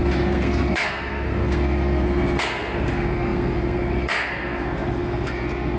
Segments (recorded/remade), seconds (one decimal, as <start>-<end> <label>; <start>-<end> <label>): 0.0-5.8 remade